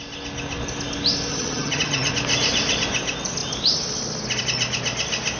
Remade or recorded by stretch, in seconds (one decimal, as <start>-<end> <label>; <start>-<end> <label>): 0.0-1.3 recorded; 1.3-2.1 remade; 2.1-5.4 recorded